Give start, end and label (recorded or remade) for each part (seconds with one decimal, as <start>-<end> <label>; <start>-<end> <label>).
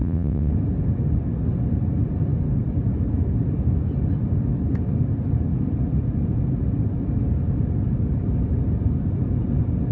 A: 0.0-0.5 remade; 0.5-9.9 recorded